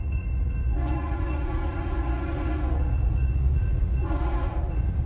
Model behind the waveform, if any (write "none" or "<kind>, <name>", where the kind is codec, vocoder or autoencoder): vocoder, Vocos